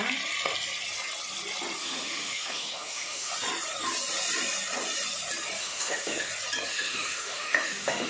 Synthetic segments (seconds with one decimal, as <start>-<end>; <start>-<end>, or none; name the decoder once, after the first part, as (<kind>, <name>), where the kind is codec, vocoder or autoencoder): 1.8-3.3 (autoencoder, DAC-VAE); 5.6-6.3; 6.7-8.1